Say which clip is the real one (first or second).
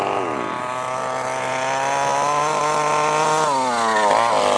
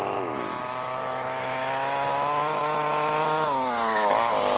first